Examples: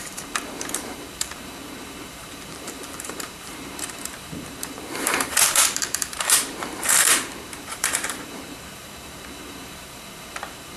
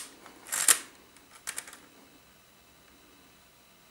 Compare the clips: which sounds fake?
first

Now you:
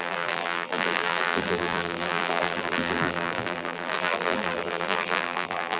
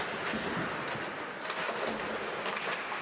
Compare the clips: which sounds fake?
first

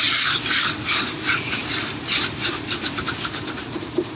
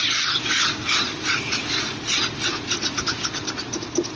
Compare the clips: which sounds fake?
first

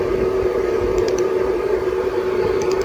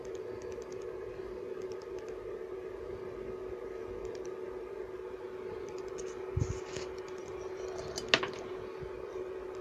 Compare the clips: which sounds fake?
first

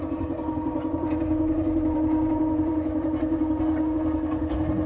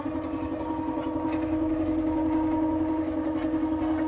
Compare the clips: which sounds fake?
first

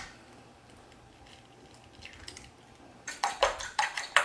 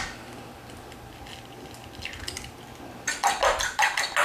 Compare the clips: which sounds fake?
first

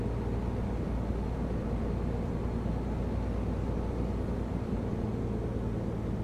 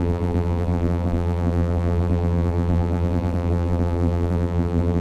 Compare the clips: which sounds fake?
second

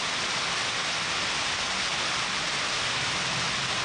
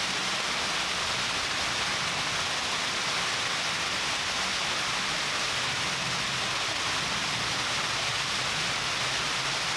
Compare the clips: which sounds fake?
first